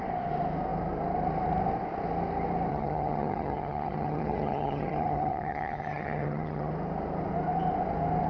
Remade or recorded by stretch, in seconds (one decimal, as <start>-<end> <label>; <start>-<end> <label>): 0.0-2.7 recorded; 2.7-6.7 remade; 6.7-8.3 recorded